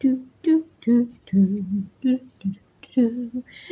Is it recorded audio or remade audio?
recorded